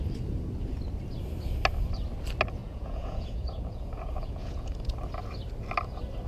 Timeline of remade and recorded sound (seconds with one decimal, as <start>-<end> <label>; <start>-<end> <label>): 0.0-2.6 recorded; 2.6-4.9 remade; 4.9-6.3 recorded

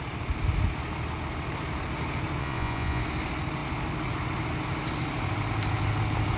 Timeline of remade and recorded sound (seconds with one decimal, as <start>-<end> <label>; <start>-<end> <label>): 0.0-2.4 recorded; 2.4-3.0 remade; 3.0-6.4 recorded

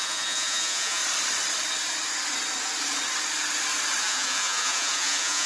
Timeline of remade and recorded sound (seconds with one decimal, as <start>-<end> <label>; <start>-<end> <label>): 0.0-1.0 remade; 1.0-4.0 recorded; 4.0-5.5 remade

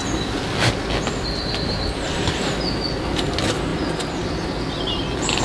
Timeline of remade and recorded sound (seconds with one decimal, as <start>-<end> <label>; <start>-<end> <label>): 0.0-5.4 recorded

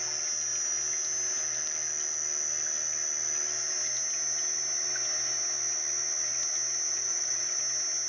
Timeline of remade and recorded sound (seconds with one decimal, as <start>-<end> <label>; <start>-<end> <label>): 0.0-6.9 recorded; 6.9-7.6 remade; 7.6-8.1 recorded

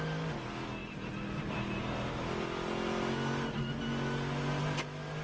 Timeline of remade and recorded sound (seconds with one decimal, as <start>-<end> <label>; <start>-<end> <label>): 0.0-5.2 recorded

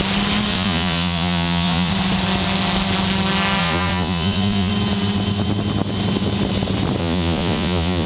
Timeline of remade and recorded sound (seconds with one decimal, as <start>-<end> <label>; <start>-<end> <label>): 0.0-0.5 recorded; 0.5-1.9 remade; 1.9-3.6 recorded; 3.6-4.7 remade; 4.7-7.0 recorded; 7.0-8.1 remade

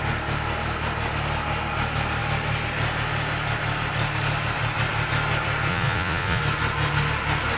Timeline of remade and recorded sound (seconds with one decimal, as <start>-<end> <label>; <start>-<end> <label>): 0.0-5.7 recorded; 5.7-6.4 remade; 6.4-7.6 recorded